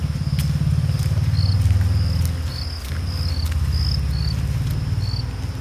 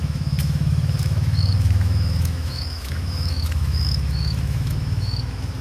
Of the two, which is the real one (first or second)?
first